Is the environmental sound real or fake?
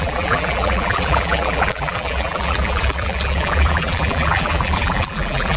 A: fake